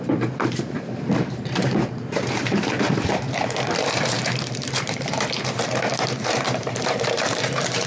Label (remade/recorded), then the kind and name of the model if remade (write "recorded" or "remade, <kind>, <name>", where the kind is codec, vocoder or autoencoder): remade, vocoder, BigVGAN v2